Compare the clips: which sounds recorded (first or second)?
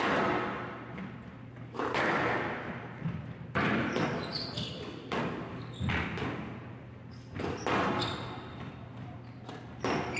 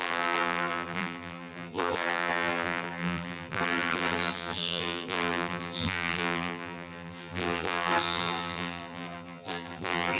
first